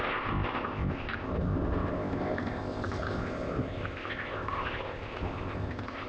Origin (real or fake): fake